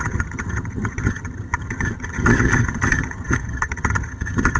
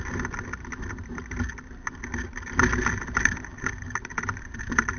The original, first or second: second